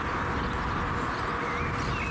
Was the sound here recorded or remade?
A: recorded